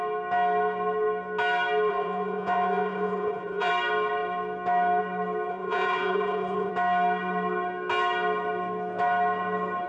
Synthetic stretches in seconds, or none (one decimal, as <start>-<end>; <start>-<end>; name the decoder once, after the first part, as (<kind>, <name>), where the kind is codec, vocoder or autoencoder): 1.9-3.7 (vocoder, Vocos); 5.5-6.7